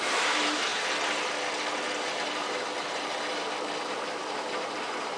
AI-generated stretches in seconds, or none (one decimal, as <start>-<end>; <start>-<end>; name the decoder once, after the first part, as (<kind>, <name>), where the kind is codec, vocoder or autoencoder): 0.0-0.7 (vocoder, BigVGAN v2); 3.8-5.2